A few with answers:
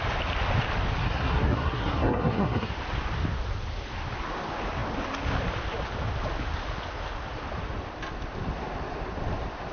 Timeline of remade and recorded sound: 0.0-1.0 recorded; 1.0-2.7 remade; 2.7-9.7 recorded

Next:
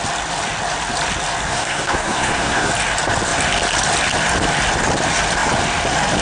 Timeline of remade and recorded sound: 0.0-1.5 recorded; 1.5-2.7 remade; 2.7-6.2 recorded

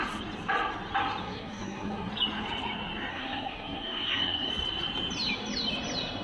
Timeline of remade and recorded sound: 0.0-1.2 recorded; 1.2-2.1 remade; 2.1-3.1 recorded; 3.1-4.5 remade; 4.5-6.2 recorded

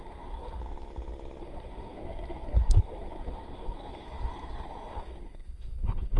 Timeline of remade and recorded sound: 0.0-0.6 remade; 0.6-1.4 recorded; 1.4-6.2 remade

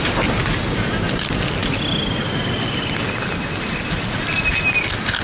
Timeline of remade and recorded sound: 0.0-5.2 recorded